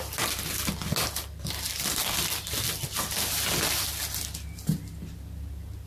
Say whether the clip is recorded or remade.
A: recorded